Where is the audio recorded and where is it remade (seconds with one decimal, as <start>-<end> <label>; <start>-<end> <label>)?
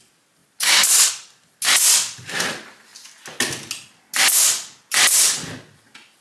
0.0-6.2 recorded